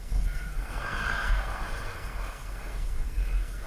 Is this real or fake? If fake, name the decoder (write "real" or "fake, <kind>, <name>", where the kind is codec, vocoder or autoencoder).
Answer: fake, codec, SNAC